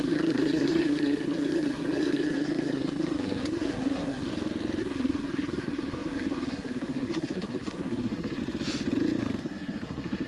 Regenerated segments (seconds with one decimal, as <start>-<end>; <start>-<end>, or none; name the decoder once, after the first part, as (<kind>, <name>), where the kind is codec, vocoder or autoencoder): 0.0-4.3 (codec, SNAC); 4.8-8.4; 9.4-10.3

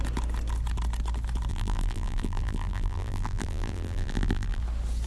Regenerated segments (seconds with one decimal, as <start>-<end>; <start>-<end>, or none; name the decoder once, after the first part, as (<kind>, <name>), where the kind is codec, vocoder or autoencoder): 1.5-4.6 (vocoder, BigVGAN v2)

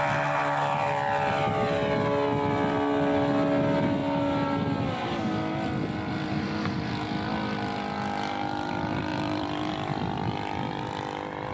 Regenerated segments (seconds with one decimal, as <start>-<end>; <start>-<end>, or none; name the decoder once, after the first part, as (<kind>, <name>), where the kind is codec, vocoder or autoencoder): 9.1-9.7 (vocoder, BigVGAN v2)